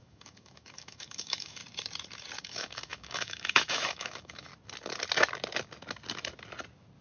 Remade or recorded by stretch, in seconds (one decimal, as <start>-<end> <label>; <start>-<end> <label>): 0.0-1.6 remade; 1.6-2.4 recorded; 2.4-4.5 remade; 4.5-7.0 recorded

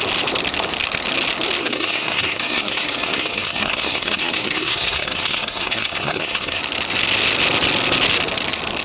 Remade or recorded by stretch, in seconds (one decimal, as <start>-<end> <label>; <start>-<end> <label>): 0.0-1.6 recorded; 1.6-6.6 remade; 6.6-8.8 recorded

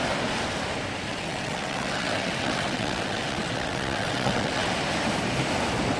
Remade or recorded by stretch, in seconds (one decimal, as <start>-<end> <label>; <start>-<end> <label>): 0.0-1.1 recorded; 1.1-4.7 remade; 4.7-6.0 recorded

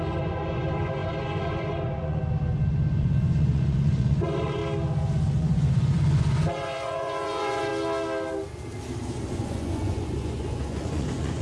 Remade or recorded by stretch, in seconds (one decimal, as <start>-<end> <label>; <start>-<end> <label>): 0.0-2.2 remade; 2.2-3.0 recorded; 3.0-4.6 remade; 4.6-5.4 recorded; 5.4-7.7 remade; 7.7-9.3 recorded; 9.3-11.4 remade